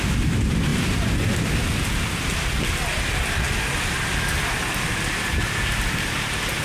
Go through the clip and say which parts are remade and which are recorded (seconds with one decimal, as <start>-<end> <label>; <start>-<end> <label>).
0.0-6.6 recorded